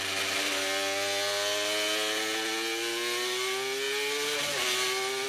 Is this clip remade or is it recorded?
recorded